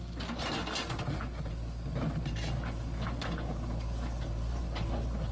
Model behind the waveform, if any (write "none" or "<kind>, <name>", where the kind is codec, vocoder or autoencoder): none